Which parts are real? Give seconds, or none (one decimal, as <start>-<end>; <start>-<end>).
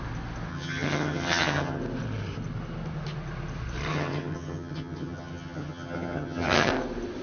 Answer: 0.0-0.5; 1.8-3.9; 6.7-7.2